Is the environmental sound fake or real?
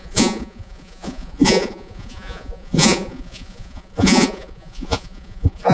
fake